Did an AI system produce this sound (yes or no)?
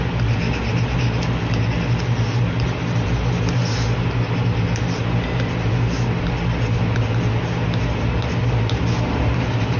no